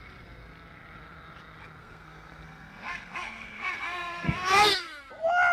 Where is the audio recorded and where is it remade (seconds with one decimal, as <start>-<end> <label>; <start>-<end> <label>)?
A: 0.0-1.8 recorded; 1.8-5.1 remade; 5.1-5.5 recorded